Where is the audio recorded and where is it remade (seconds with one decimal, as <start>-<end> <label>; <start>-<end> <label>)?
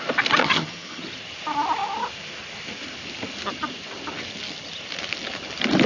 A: 0.0-0.4 recorded; 0.4-1.0 remade; 1.0-5.9 recorded